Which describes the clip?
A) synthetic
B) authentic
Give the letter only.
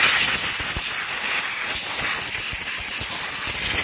B